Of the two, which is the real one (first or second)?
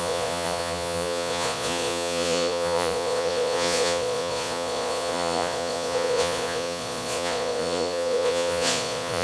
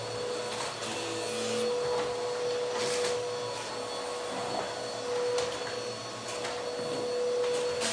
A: second